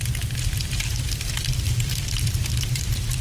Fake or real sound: fake